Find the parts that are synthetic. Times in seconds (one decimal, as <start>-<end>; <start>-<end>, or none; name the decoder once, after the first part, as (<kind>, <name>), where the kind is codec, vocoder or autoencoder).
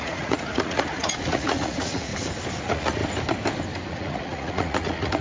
0.0-2.1 (vocoder, Vocos); 2.6-3.0; 3.9-5.2